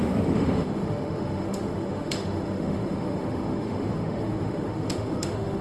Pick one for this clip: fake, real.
fake